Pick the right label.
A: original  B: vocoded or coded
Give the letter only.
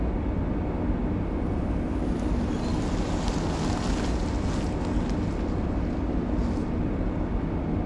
A